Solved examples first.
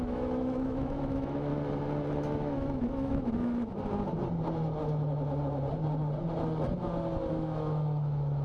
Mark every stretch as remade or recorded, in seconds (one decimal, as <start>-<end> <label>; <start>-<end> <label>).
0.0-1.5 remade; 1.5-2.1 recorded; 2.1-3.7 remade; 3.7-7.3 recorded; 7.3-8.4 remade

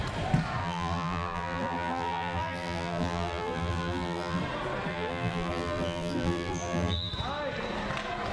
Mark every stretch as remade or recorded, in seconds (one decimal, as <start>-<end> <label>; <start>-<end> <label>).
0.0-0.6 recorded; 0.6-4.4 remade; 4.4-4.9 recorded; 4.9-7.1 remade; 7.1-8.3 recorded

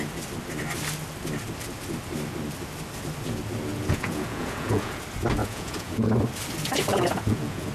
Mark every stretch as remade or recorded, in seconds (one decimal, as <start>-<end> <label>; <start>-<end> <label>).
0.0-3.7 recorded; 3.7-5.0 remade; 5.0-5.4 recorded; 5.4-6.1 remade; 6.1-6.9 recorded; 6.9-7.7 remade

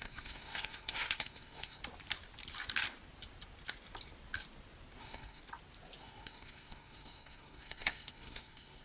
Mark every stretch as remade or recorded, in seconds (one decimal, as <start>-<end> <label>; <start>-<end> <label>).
0.0-1.8 remade; 1.8-5.0 recorded; 5.0-5.4 remade; 5.4-6.0 recorded; 6.0-8.8 remade